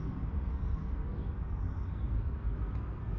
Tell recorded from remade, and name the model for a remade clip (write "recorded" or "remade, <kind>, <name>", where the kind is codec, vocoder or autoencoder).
remade, codec, SNAC